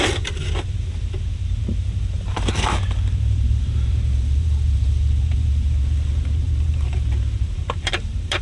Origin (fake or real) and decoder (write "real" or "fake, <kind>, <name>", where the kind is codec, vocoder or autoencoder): fake, vocoder, BigVGAN v2